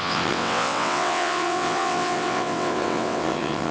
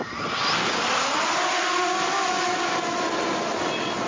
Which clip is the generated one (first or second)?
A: first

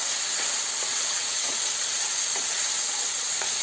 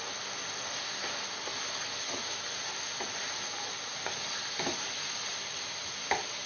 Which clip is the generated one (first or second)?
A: first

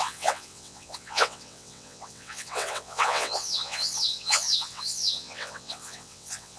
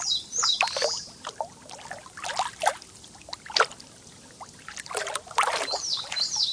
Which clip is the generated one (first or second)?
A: first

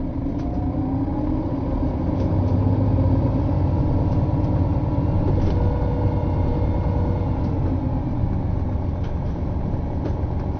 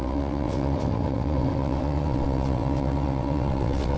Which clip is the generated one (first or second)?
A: second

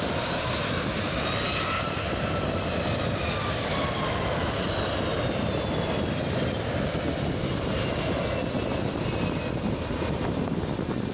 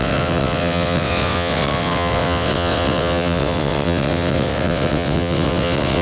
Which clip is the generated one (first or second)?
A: second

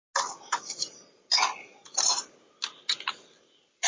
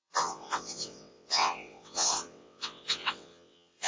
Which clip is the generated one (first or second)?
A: second